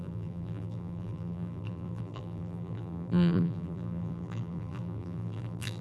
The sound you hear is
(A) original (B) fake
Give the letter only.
B